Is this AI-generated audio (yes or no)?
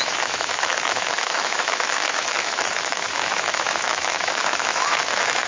yes